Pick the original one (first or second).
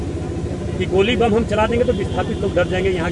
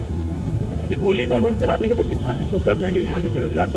first